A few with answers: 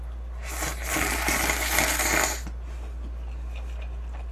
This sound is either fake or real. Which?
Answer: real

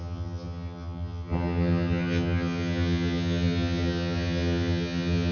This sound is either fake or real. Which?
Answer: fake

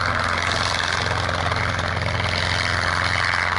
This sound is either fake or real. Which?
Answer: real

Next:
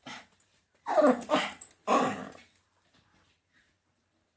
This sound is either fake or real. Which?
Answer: fake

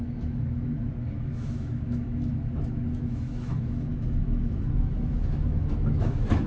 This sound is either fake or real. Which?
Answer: fake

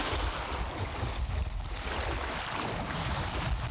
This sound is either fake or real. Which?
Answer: real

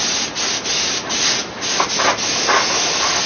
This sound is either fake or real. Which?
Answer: real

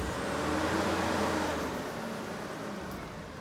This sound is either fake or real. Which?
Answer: real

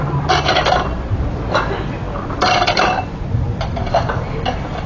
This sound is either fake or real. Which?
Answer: real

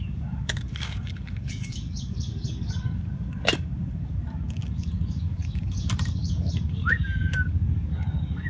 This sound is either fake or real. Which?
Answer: fake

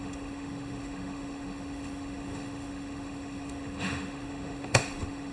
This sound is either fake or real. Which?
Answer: fake